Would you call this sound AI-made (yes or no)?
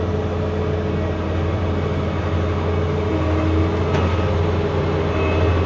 no